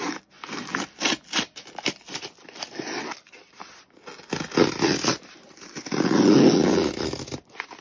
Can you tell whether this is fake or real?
real